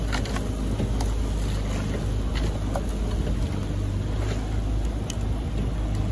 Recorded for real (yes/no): yes